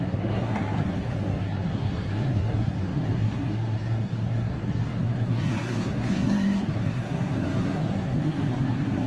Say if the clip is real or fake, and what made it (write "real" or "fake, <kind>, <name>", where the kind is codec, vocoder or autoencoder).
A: fake, codec, SNAC